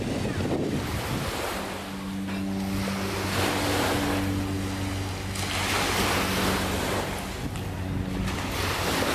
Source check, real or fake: real